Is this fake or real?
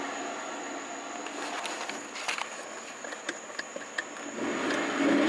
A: real